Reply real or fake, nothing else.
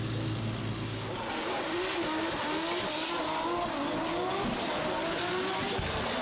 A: real